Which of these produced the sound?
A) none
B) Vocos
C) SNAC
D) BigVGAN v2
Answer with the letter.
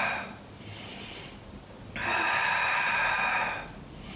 A